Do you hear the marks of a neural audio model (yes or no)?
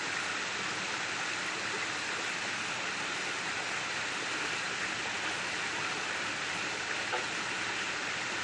no